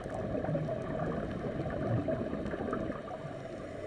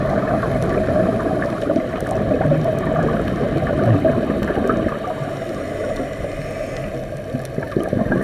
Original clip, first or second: second